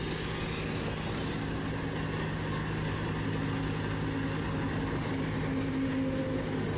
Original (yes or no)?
yes